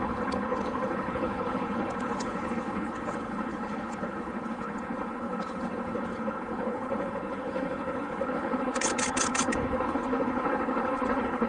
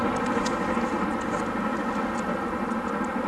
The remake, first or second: first